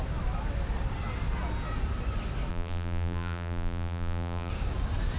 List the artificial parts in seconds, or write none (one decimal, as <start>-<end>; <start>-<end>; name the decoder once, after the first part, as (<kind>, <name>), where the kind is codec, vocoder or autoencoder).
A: 2.5-4.5 (vocoder, BigVGAN v2)